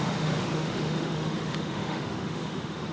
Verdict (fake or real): fake